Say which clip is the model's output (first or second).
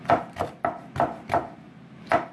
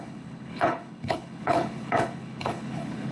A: second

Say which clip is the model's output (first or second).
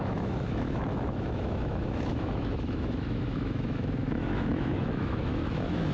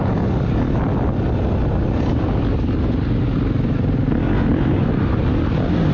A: first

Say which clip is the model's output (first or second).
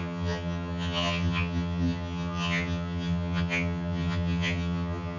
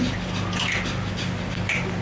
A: first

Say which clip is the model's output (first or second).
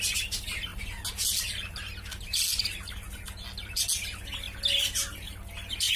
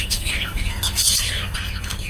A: second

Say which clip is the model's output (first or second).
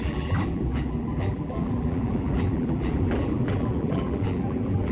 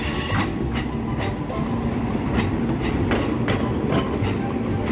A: first